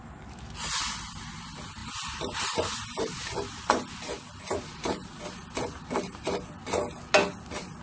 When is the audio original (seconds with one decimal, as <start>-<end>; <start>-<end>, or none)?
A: 0.0-7.8